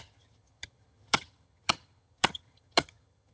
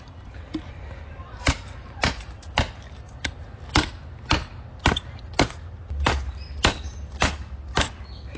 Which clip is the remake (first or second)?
first